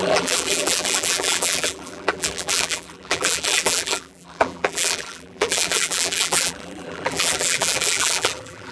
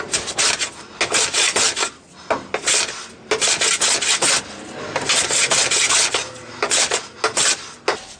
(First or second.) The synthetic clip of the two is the first